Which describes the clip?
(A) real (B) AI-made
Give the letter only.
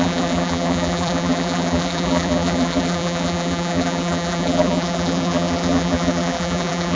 B